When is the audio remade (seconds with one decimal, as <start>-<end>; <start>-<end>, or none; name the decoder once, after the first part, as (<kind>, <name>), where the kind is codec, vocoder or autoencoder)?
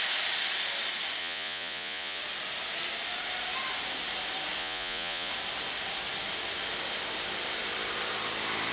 1.2-2.2 (vocoder, Vocos); 4.6-5.3